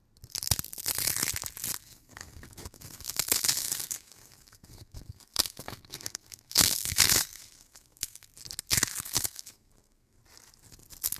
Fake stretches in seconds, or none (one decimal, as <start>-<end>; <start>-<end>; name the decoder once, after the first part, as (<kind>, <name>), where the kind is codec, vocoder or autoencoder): 1.8-8.3 (codec, SNAC); 9.0-10.2